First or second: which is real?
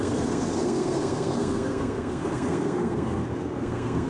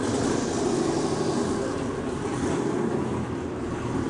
second